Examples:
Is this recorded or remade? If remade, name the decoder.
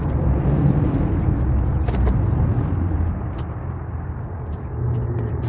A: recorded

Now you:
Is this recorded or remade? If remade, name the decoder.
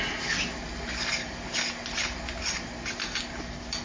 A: recorded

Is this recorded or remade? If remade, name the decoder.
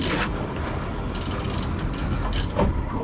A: recorded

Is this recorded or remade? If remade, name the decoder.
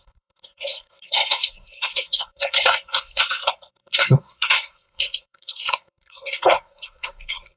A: remade, codec, SNAC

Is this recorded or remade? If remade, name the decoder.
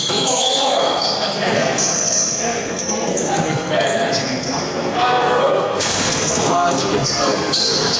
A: remade, codec, SNAC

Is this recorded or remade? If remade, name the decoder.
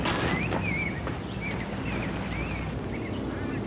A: recorded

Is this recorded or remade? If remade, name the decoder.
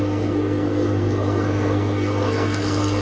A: remade, codec, SNAC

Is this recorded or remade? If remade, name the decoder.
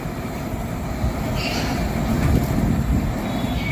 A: recorded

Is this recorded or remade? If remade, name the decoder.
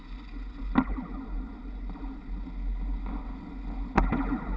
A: recorded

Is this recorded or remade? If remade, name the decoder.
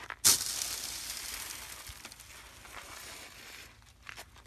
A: recorded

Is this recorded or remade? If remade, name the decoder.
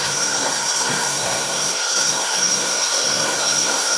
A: remade, codec, SNAC